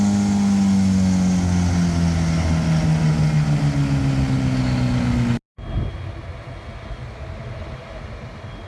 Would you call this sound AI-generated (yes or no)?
no